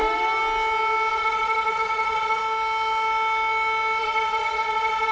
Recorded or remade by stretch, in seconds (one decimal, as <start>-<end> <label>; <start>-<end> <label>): 0.0-1.1 recorded; 1.1-2.4 remade; 2.4-4.0 recorded; 4.0-5.1 remade